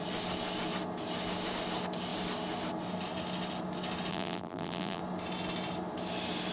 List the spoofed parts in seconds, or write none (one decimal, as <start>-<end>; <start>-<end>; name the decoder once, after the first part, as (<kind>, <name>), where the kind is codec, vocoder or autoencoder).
4.1-5.0 (vocoder, BigVGAN v2)